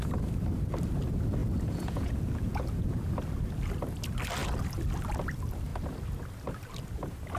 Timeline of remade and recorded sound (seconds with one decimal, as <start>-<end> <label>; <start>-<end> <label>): 0.0-1.4 recorded; 1.4-3.0 remade; 3.0-7.4 recorded